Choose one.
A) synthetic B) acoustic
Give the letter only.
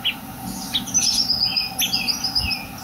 B